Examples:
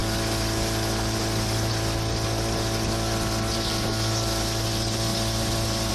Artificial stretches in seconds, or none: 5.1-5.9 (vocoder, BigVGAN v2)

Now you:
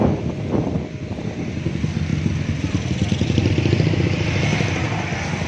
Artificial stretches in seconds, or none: 2.1-3.5 (vocoder, BigVGAN v2); 4.5-5.5